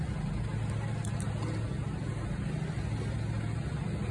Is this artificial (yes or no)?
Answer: no